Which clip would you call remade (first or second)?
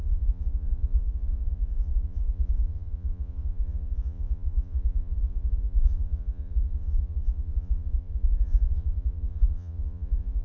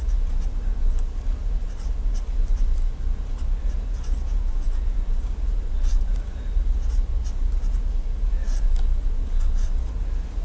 first